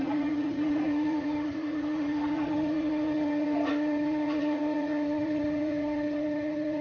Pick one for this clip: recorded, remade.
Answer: remade